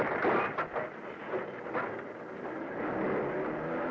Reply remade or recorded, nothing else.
recorded